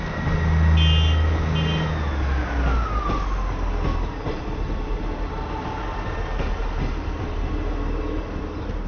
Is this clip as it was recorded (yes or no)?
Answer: yes